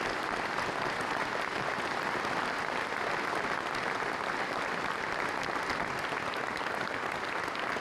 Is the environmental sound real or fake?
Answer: real